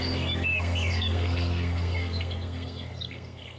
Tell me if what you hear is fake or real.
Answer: fake